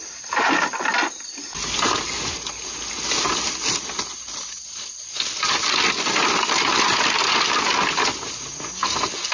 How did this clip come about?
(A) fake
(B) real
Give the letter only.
B